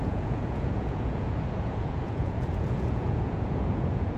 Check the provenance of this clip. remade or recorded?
remade